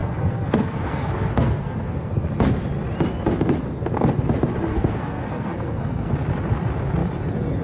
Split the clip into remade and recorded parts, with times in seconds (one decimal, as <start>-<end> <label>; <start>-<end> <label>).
0.0-2.1 remade; 2.1-4.7 recorded; 4.7-6.1 remade; 6.1-7.6 recorded